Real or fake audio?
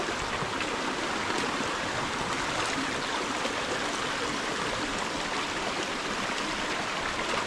real